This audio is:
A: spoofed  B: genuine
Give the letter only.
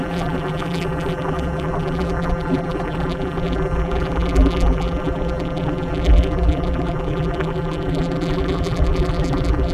A